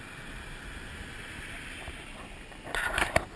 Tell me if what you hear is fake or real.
real